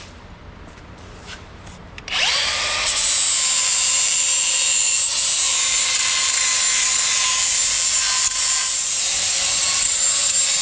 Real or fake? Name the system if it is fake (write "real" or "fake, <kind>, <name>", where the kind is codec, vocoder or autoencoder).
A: fake, vocoder, BigVGAN v2